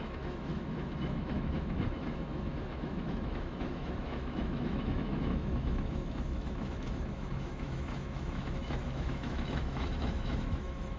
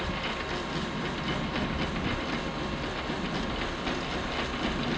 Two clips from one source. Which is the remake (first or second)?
first